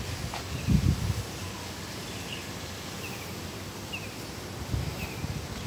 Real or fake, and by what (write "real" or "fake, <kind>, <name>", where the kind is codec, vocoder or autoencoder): real